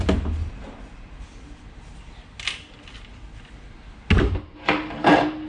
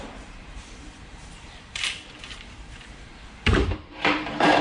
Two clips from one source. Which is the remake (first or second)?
second